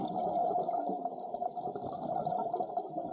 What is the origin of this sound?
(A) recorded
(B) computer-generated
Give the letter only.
A